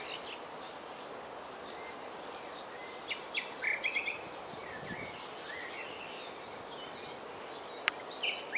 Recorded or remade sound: recorded